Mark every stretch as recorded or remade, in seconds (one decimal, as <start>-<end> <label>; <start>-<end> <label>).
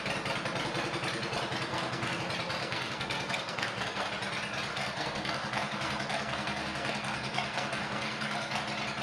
0.0-1.7 recorded; 1.7-2.2 remade; 2.2-2.6 recorded; 2.6-4.1 remade; 4.1-4.7 recorded; 4.7-8.6 remade; 8.6-9.0 recorded